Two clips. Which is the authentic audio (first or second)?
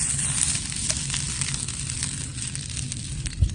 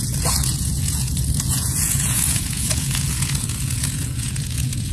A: first